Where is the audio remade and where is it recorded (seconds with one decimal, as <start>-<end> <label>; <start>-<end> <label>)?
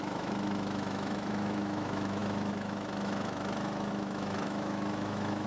0.0-5.5 remade